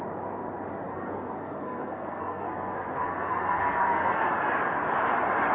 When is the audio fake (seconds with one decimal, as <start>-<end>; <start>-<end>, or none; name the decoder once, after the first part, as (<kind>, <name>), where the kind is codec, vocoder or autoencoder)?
0.9-4.2 (codec, SNAC)